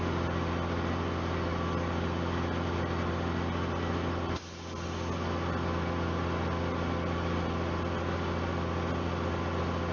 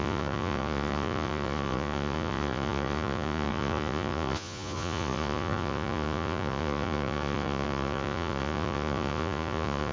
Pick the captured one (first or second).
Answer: first